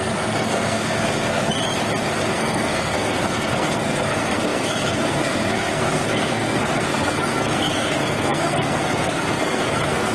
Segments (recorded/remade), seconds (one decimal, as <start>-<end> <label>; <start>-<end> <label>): 0.0-1.5 remade; 1.5-2.3 recorded; 2.3-10.1 remade